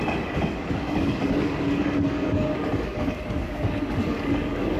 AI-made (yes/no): yes